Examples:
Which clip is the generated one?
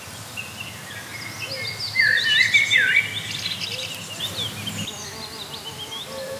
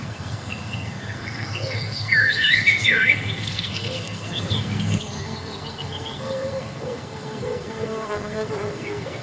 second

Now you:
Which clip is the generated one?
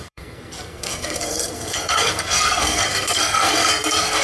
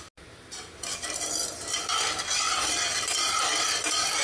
first